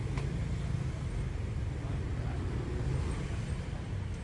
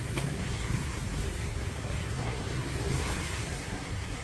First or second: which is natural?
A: first